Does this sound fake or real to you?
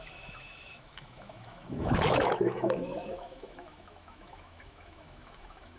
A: fake